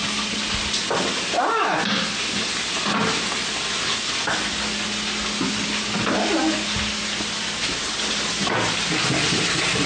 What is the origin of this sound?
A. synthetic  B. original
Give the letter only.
B